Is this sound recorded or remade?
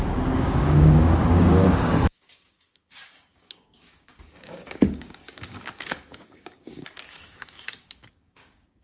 remade